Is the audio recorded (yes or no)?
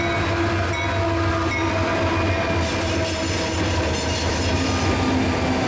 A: yes